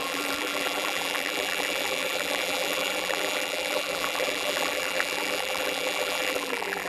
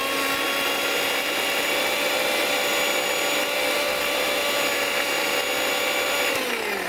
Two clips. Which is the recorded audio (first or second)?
second